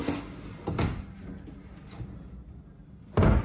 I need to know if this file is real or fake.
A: real